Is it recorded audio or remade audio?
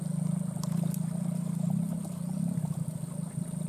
recorded